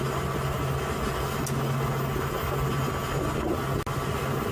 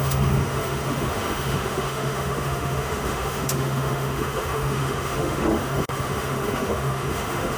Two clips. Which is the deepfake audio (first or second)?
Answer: second